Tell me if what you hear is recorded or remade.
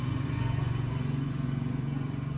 remade